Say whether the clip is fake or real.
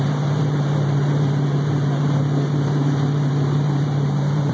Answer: fake